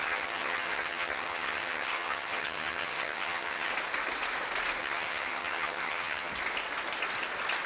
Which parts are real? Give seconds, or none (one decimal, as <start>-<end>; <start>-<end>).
3.7-4.8; 6.3-7.7